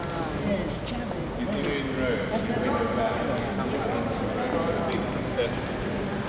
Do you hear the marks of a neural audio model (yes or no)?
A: no